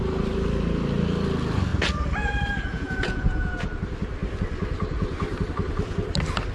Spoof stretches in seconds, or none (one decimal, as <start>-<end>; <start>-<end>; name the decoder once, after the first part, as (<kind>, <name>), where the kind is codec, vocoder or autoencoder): 2.7-3.5 (vocoder, Vocos)